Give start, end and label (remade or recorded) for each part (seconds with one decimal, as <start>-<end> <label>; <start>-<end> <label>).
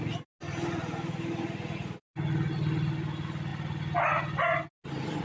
0.0-5.2 recorded